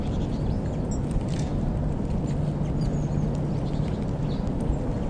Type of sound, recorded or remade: recorded